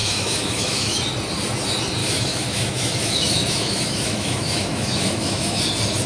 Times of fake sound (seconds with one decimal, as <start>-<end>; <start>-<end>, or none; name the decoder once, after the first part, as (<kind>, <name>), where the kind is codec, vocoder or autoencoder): 0.0-1.0 (autoencoder, DAC-VAE); 2.0-5.6